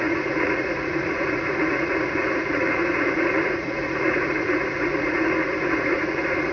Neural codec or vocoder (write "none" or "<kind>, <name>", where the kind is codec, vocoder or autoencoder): vocoder, Vocos